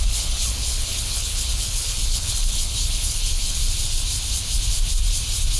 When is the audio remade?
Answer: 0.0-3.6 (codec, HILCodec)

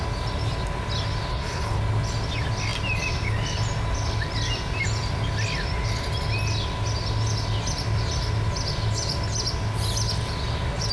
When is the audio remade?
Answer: 1.3-1.8 (codec, HILCodec)